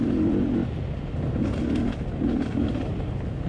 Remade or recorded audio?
recorded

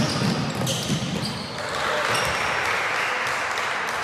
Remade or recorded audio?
recorded